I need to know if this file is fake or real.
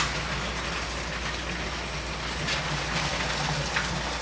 real